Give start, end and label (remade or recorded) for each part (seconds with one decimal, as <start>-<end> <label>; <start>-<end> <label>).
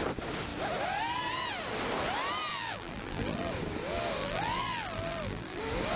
0.0-2.5 recorded; 2.5-3.5 remade; 3.5-4.2 recorded; 4.2-5.6 remade; 5.6-6.0 recorded